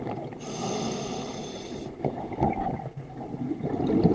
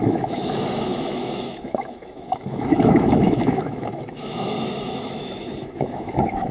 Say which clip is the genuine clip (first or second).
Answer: first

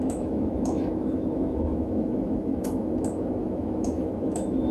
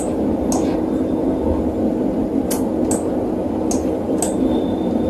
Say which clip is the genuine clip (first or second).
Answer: second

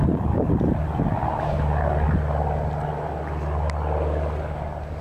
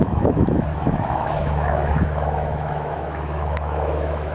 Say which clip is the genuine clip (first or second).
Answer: first